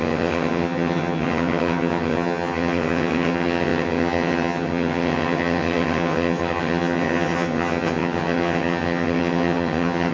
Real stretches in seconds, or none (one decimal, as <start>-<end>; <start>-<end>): none